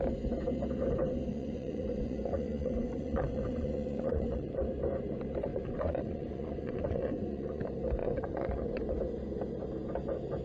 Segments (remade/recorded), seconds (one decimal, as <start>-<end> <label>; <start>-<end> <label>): 0.0-1.3 recorded; 1.3-4.6 remade; 4.6-5.5 recorded; 5.5-7.6 remade; 7.6-8.0 recorded; 8.0-8.9 remade; 8.9-10.4 recorded